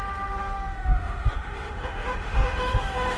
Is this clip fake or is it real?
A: fake